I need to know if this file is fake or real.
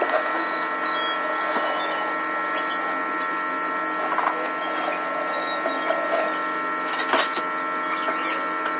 real